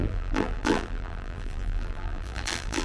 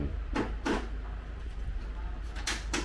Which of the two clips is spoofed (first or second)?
first